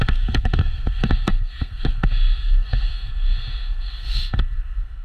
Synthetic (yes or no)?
yes